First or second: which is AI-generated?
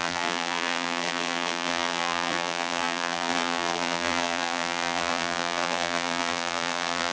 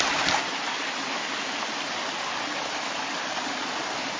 first